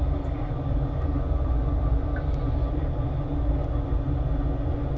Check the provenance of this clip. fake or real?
real